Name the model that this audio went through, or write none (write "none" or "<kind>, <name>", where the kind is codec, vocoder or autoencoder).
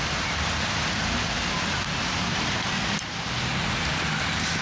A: none